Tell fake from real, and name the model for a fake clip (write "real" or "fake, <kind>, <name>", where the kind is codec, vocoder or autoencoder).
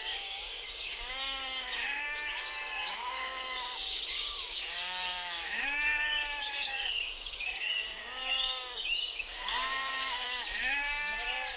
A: fake, codec, DAC